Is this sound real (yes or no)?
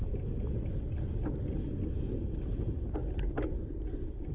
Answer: yes